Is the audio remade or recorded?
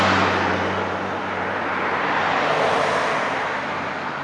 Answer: recorded